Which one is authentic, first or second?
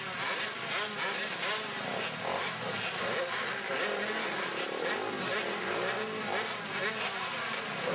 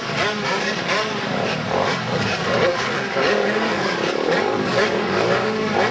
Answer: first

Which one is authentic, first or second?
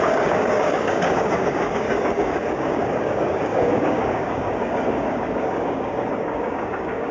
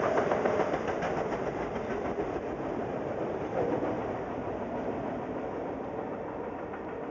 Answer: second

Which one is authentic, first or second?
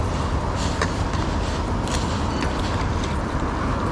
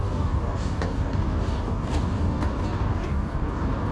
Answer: first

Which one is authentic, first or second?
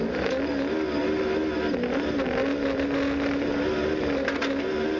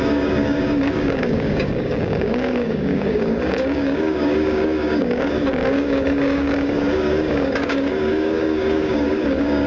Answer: first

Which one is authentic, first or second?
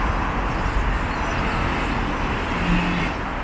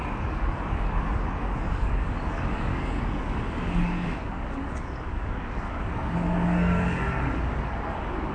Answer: first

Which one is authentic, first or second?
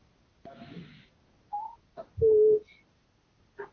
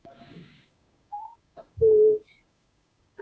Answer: first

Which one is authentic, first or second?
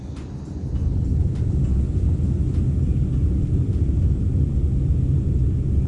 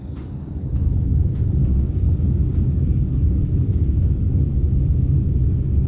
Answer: first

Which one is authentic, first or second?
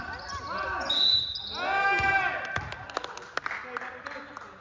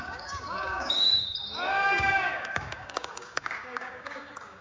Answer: first